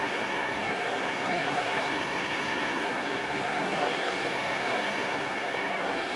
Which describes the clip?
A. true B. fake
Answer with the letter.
B